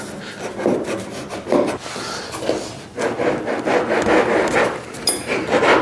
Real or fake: real